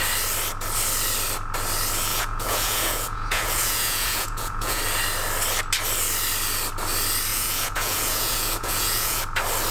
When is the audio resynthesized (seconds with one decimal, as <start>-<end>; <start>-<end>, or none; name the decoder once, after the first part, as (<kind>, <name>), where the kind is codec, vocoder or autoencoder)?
2.1-4.8 (vocoder, Vocos); 7.3-9.2